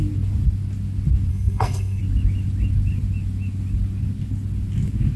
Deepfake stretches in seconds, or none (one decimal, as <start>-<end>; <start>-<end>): 1.3-2.0